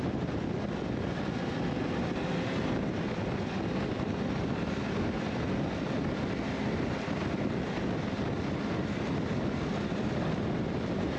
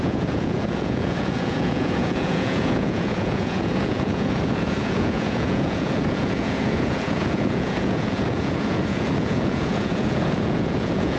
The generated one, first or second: second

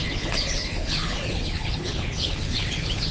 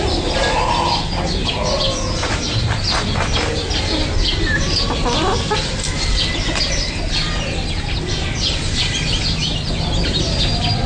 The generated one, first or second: first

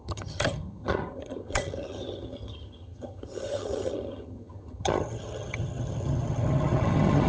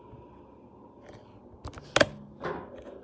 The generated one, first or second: first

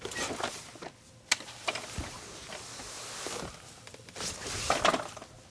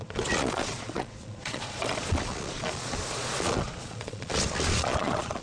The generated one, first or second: second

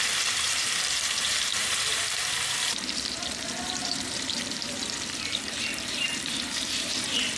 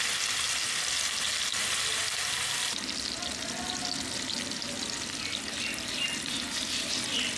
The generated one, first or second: first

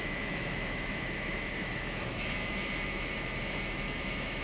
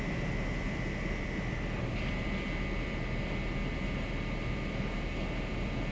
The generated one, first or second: first